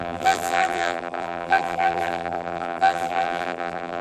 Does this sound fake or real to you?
fake